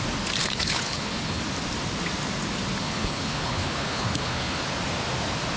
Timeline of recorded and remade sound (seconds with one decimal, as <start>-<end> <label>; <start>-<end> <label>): 0.0-0.4 recorded; 0.4-1.4 remade; 1.4-2.8 recorded; 2.8-4.6 remade; 4.6-5.6 recorded